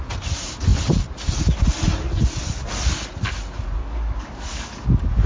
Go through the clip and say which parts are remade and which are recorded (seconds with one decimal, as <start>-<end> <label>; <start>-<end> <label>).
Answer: 0.0-3.8 recorded; 3.8-4.8 remade; 4.8-5.3 recorded